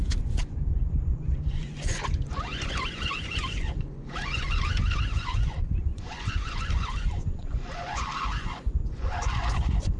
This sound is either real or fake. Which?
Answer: fake